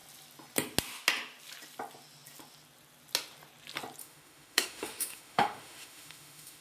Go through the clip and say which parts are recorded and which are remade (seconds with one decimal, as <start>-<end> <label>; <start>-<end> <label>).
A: 0.0-4.0 recorded; 4.0-6.6 remade